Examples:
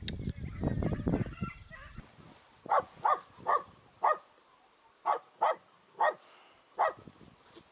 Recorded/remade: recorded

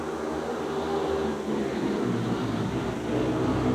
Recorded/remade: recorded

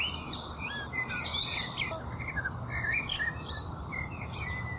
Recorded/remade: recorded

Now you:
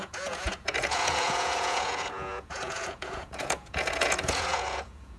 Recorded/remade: remade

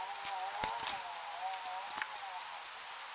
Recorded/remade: recorded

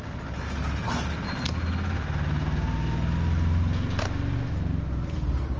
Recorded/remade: recorded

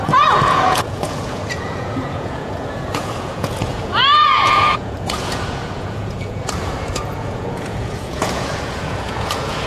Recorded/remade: remade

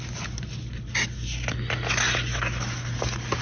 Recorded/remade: recorded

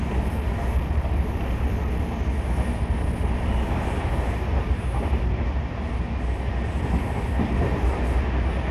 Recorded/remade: recorded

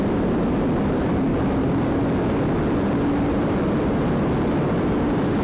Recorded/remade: recorded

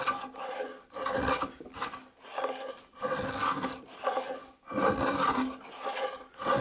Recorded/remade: recorded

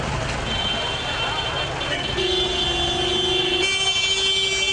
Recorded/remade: recorded